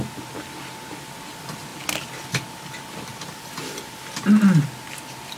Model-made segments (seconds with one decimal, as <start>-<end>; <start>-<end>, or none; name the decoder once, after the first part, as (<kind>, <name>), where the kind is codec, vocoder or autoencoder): 3.1-4.1 (vocoder, BigVGAN v2)